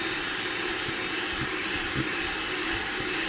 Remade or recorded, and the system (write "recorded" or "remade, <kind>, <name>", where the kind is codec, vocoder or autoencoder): recorded